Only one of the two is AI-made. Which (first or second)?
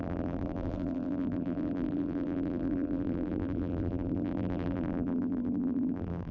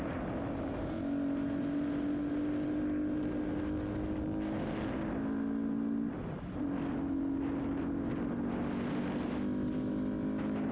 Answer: first